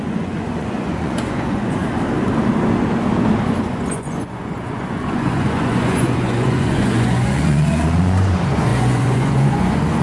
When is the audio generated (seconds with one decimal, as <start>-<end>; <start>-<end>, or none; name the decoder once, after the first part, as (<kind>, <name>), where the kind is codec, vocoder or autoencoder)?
0.0-1.8 (vocoder, Vocos); 3.4-10.0